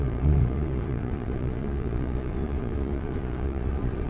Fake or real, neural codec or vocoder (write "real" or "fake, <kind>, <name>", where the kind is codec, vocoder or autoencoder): fake, vocoder, Vocos